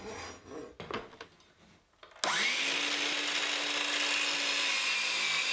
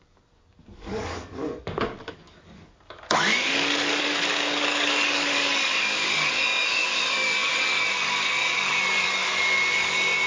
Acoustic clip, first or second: first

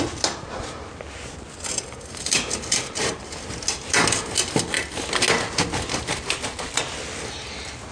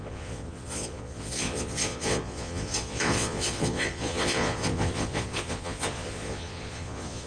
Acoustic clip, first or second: first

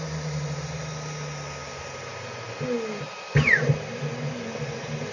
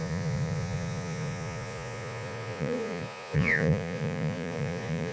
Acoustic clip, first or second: first